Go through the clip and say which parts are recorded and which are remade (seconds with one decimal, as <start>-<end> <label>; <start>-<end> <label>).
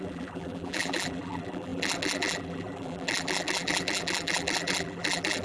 0.0-5.4 remade